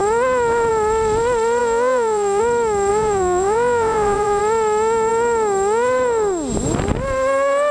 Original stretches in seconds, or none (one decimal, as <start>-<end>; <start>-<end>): 0.0-1.6; 2.4-2.9; 4.4-7.7